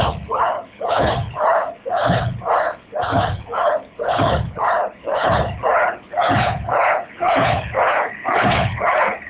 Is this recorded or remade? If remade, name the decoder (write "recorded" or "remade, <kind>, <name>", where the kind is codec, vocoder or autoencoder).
remade, codec, HILCodec